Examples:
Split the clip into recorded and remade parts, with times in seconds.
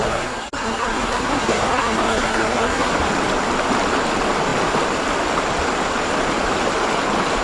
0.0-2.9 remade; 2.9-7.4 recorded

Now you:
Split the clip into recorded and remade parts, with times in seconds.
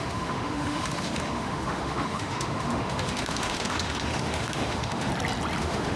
0.0-5.1 remade; 5.1-5.6 recorded; 5.6-6.0 remade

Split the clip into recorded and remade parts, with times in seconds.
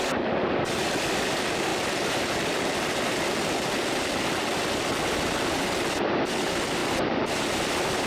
0.0-8.1 remade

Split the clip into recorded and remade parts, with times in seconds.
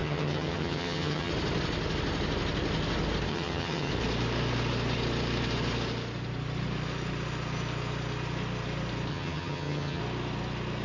0.0-1.3 remade; 1.3-3.3 recorded; 3.3-3.9 remade; 3.9-9.1 recorded; 9.1-10.0 remade; 10.0-10.8 recorded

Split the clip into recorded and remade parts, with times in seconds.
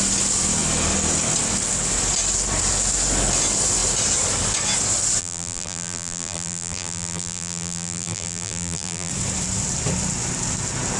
0.0-5.2 recorded; 5.2-9.1 remade; 9.1-11.0 recorded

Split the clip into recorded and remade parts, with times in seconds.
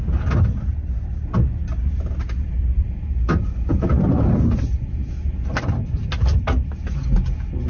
0.0-3.7 recorded; 3.7-4.3 remade; 4.3-7.7 recorded